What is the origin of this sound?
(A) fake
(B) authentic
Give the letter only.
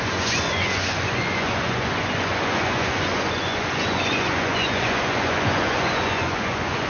A